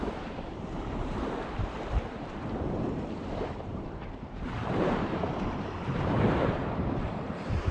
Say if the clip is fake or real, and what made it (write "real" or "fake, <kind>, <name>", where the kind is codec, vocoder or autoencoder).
fake, vocoder, BigVGAN v2